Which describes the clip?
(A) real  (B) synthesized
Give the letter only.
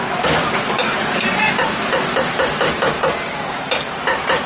A